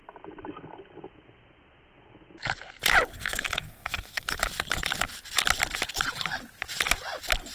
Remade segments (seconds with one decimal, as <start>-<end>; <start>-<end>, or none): 3.1-4.4